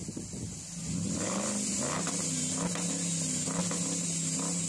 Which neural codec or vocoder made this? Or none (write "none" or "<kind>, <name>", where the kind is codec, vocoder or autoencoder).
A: none